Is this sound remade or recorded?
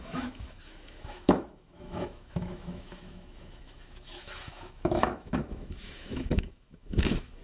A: remade